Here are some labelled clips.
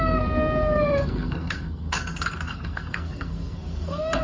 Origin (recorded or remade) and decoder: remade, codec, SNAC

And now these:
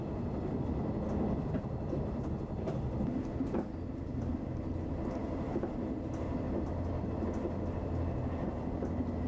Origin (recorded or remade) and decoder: recorded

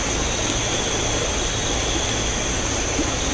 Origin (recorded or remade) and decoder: recorded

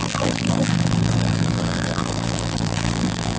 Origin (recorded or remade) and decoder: remade, vocoder, BigVGAN v2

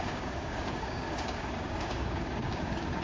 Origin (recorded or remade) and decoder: remade, codec, DAC